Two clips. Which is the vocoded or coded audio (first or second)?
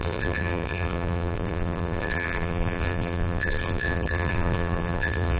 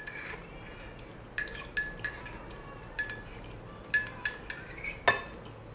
first